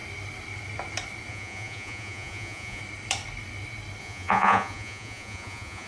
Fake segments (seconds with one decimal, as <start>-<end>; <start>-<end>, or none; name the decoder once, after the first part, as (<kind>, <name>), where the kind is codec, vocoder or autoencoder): 1.3-2.8 (vocoder, Vocos); 4.0-5.9